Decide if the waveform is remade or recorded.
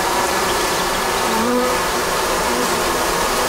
remade